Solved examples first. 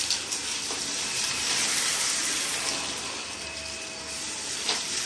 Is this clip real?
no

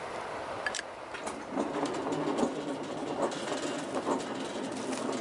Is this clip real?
yes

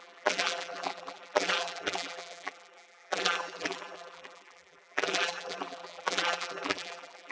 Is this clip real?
no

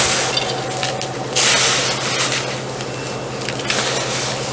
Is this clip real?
yes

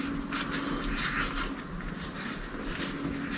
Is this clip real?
yes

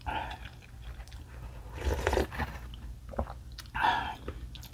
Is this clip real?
yes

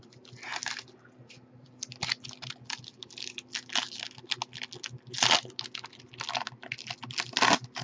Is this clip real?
yes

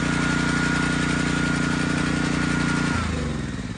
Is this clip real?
yes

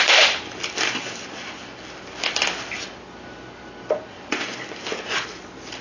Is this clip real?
no